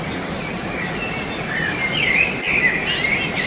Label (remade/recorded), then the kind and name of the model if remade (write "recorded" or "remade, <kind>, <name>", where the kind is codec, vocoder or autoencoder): recorded